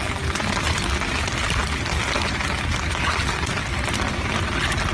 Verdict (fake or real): real